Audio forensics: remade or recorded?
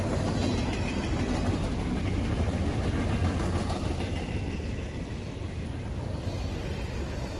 recorded